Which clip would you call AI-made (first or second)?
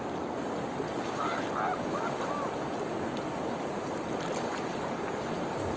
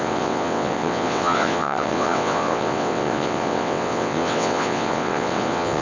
second